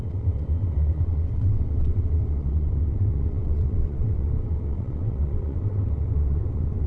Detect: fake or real fake